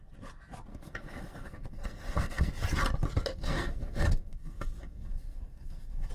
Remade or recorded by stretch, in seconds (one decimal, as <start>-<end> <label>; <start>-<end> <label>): 0.0-0.7 recorded; 0.7-2.5 remade; 2.5-3.3 recorded; 3.3-6.1 remade